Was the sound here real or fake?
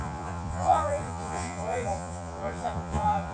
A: fake